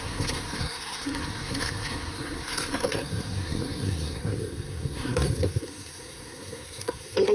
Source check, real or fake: fake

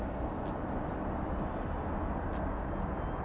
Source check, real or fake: real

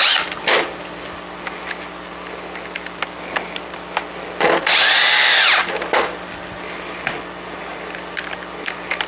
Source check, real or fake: real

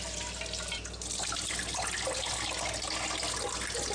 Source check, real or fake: real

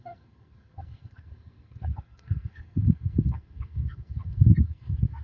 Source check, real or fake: fake